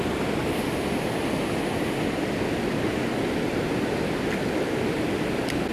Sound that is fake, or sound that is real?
real